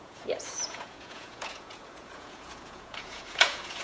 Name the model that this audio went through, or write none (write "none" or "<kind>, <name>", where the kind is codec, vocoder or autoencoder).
vocoder, Vocos